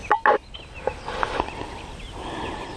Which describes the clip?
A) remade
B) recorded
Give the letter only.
B